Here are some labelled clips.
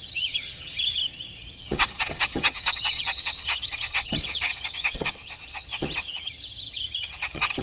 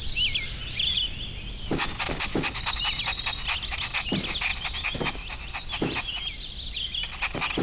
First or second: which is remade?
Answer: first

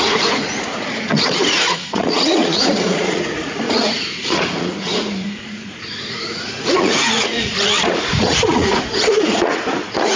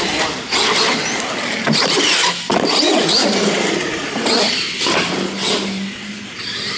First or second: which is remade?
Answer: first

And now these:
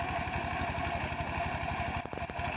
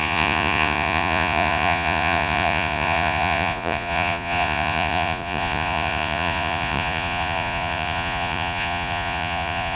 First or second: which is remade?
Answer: second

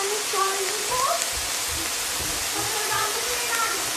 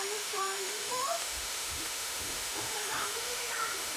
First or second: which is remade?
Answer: second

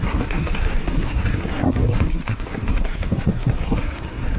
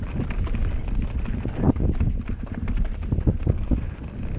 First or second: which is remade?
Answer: first